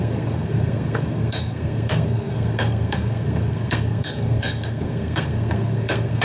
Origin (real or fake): fake